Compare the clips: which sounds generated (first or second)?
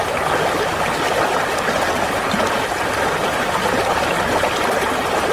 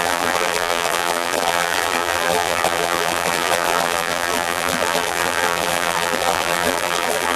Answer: second